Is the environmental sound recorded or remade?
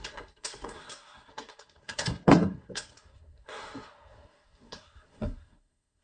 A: remade